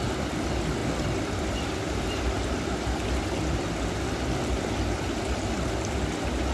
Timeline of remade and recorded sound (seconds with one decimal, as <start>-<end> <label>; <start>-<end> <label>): 0.0-0.8 recorded; 0.8-3.2 remade; 3.2-6.5 recorded